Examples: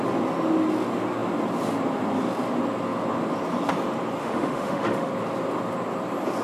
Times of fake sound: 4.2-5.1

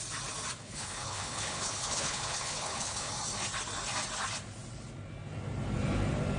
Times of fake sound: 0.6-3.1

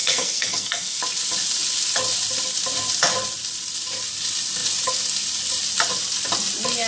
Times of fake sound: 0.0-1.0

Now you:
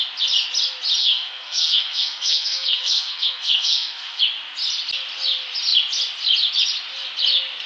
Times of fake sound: 1.0-4.2